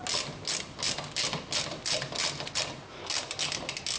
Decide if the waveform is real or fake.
real